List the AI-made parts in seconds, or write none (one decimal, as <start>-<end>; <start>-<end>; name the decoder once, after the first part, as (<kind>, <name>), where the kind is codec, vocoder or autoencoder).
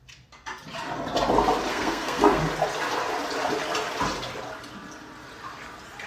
1.7-2.4 (codec, SNAC)